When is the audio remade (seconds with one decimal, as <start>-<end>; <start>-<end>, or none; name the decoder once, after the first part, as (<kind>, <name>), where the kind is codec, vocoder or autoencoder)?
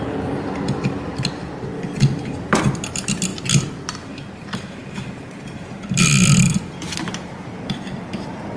none